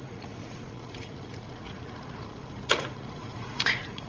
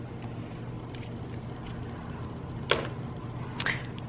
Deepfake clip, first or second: first